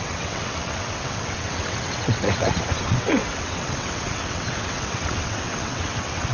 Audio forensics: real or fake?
fake